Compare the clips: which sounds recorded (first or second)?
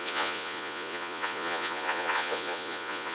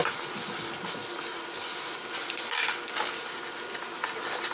second